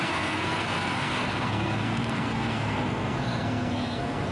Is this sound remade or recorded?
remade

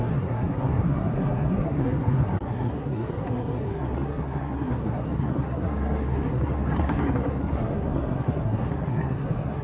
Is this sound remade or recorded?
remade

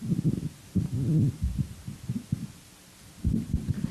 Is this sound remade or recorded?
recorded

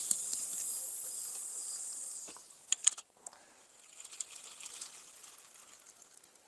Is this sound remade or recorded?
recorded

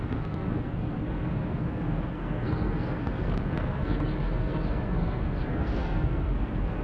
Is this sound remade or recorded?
remade